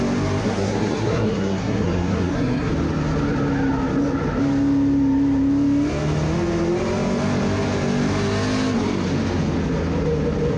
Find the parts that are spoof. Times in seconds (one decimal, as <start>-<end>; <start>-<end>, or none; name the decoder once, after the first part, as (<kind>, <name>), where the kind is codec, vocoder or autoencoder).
0.4-2.7 (codec, SNAC)